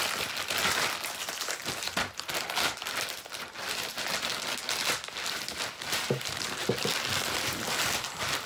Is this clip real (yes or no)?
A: yes